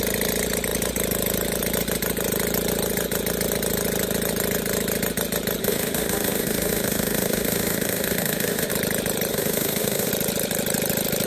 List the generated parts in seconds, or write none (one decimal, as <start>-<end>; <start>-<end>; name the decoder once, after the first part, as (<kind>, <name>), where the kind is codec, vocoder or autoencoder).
5.6-8.7 (autoencoder, DAC-VAE); 9.3-10.1

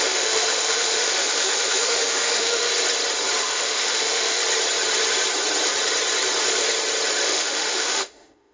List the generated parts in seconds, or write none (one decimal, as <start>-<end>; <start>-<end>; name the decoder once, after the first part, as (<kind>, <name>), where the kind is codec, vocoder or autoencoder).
0.0-2.7 (autoencoder, DAC-VAE); 3.4-4.4; 7.2-8.5

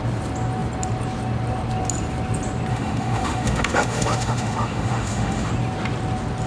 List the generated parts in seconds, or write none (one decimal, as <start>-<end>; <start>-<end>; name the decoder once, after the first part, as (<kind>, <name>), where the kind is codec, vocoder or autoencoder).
2.7-5.5 (autoencoder, DAC-VAE)

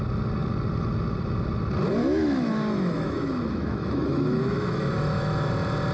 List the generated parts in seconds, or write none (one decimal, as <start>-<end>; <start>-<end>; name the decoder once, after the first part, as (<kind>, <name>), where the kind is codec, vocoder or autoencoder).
2.0-5.5 (autoencoder, DAC-VAE)

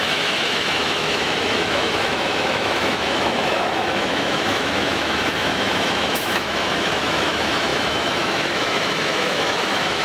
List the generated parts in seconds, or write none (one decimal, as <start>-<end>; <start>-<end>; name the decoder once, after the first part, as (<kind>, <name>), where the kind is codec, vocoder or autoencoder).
0.0-10.0 (autoencoder, DAC-VAE)